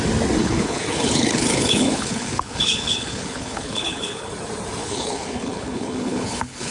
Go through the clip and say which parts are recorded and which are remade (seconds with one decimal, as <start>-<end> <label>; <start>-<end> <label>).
0.0-0.4 recorded; 0.4-4.3 remade; 4.3-4.8 recorded; 4.8-6.7 remade